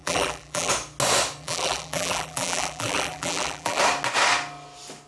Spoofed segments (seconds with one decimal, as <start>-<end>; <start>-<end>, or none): 0.0-0.7; 1.4-3.8